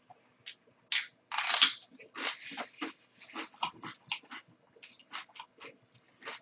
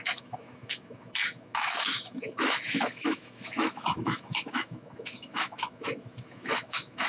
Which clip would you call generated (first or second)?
second